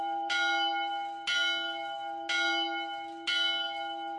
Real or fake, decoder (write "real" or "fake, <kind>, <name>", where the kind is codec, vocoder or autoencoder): real